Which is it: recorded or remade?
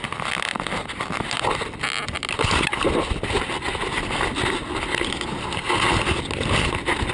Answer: recorded